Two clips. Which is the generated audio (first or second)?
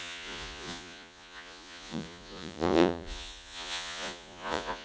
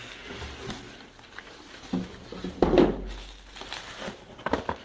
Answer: first